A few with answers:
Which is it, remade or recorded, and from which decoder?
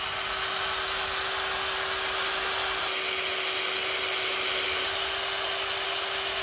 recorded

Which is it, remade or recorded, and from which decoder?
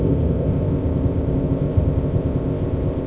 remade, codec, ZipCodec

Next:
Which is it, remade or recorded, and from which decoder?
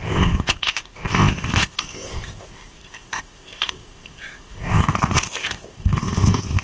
remade, codec, ZipCodec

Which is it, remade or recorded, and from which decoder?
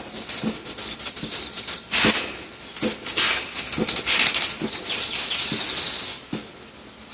recorded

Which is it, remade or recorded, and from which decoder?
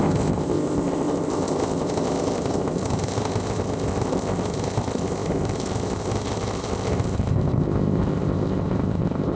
remade, codec, ZipCodec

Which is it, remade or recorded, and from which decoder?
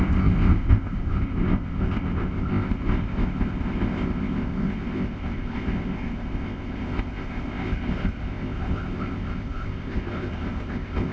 remade, codec, ZipCodec